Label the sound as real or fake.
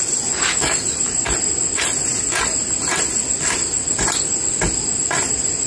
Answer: real